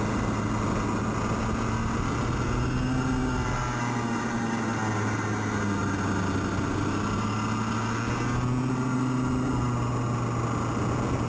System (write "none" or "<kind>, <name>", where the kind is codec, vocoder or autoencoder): none